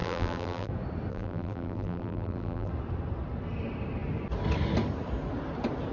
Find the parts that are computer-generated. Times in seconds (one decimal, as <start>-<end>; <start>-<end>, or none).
0.0-0.7; 1.1-2.7